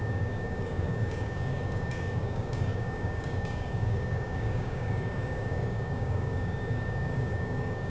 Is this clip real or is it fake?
fake